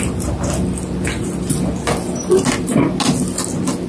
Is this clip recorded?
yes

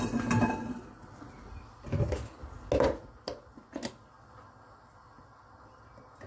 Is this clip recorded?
yes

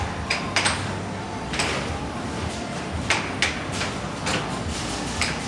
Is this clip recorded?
no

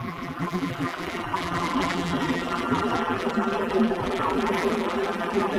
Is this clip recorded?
no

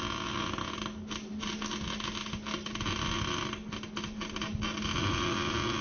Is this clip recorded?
yes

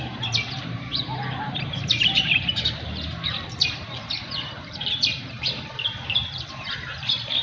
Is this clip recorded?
no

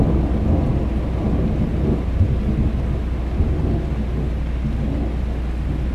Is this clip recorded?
yes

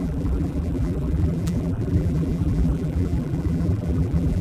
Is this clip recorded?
no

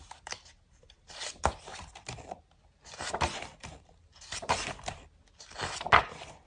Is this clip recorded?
no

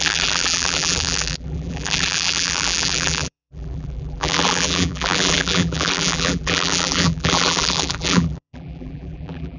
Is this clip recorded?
no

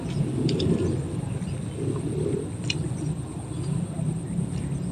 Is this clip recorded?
yes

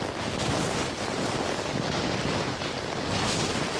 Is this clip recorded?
yes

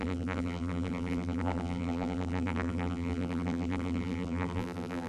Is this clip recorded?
no